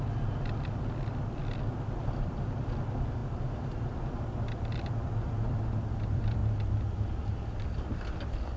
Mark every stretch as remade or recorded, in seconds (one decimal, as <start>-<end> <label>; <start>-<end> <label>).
0.0-1.4 remade; 1.4-2.0 recorded; 2.0-6.4 remade; 6.4-8.6 recorded